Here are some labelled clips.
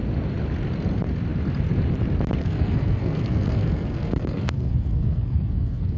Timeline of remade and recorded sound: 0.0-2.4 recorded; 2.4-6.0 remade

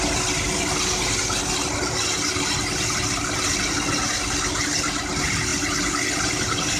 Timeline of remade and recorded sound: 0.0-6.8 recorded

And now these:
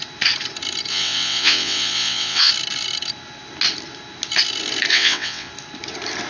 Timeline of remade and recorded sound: 0.0-0.9 recorded; 0.9-2.5 remade; 2.5-4.9 recorded; 4.9-5.5 remade; 5.5-6.3 recorded